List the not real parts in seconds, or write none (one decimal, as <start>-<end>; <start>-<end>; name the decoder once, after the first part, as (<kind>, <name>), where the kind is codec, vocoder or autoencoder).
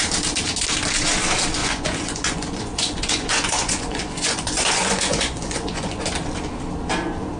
1.6-6.0 (vocoder, Vocos)